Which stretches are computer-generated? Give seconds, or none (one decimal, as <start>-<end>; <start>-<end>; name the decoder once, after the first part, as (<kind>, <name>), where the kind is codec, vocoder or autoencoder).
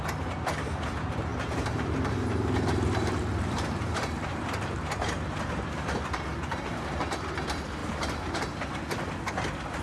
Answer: 1.3-5.5 (vocoder, BigVGAN v2); 6.3-7.0; 7.8-8.3